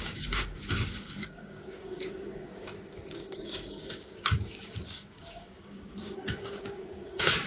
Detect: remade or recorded remade